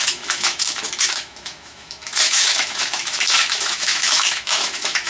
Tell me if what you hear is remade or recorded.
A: remade